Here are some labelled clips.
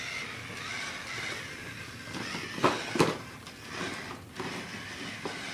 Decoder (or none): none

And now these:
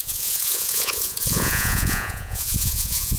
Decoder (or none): vocoder, Vocos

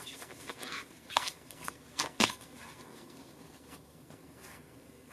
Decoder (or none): codec, SNAC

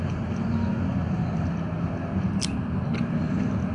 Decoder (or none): none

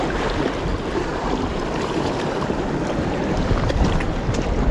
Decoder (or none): vocoder, BigVGAN v2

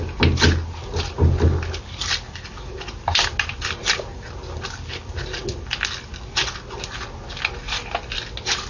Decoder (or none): none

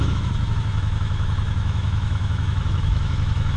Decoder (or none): autoencoder, DAC-VAE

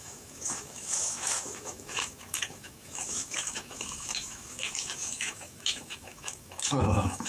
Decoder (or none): autoencoder, DAC-VAE